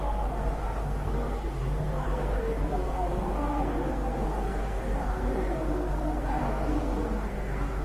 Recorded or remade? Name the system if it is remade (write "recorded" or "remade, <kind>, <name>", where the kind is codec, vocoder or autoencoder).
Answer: remade, codec, SNAC